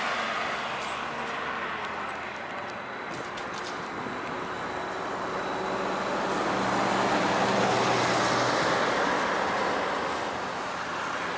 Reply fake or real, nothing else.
real